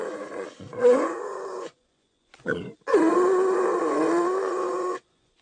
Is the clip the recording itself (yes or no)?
no